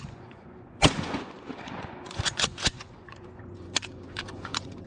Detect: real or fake fake